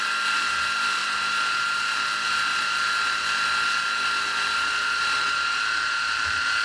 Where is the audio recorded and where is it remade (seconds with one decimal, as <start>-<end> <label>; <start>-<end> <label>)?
0.0-6.6 recorded